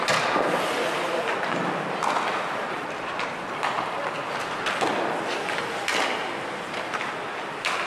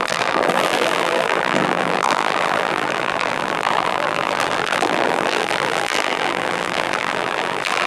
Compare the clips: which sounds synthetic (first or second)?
second